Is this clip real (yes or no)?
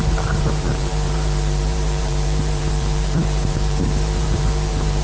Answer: no